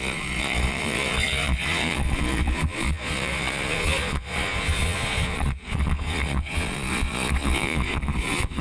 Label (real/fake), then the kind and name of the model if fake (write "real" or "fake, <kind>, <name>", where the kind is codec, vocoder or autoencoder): fake, vocoder, Vocos